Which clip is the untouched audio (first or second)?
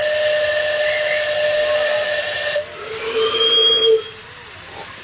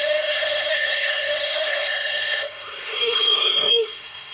first